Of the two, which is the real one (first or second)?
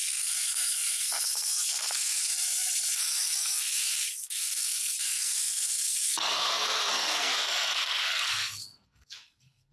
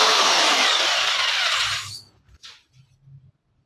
second